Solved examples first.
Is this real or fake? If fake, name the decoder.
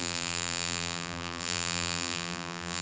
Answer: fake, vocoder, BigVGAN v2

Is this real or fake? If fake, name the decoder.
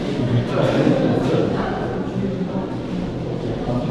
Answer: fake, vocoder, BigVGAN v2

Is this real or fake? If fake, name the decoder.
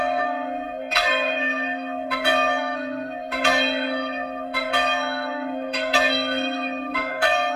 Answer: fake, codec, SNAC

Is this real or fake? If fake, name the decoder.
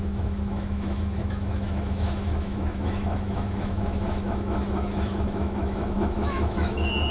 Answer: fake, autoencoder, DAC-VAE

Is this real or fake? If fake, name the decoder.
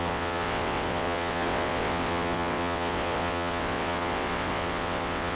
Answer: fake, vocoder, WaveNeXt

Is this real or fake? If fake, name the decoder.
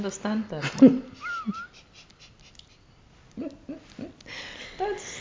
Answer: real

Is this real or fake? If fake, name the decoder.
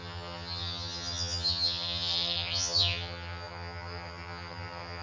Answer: fake, vocoder, HiFi-GAN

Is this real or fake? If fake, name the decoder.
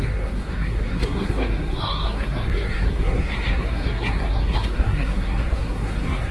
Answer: fake, codec, SNAC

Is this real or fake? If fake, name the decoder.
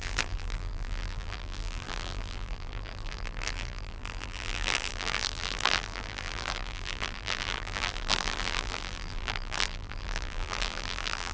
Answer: fake, vocoder, BigVGAN v2